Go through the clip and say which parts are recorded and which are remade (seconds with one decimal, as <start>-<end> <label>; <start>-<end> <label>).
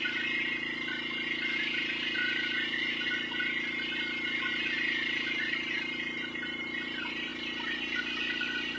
0.0-1.8 remade; 1.8-4.5 recorded; 4.5-7.3 remade; 7.3-8.8 recorded